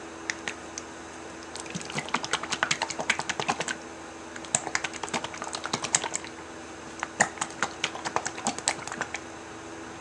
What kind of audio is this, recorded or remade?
recorded